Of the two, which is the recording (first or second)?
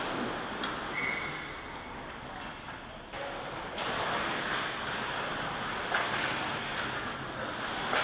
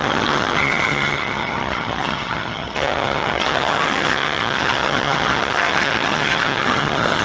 first